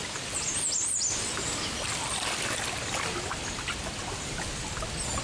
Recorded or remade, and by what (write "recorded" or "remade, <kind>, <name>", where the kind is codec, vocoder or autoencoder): recorded